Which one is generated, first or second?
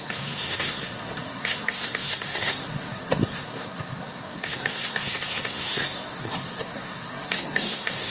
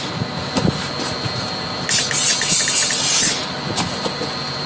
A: first